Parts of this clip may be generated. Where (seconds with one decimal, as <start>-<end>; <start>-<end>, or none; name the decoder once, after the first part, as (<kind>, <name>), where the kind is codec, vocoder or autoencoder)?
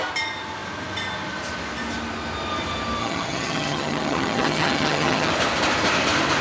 3.0-5.3 (vocoder, HiFi-GAN)